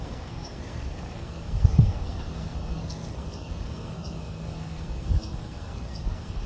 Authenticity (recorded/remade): remade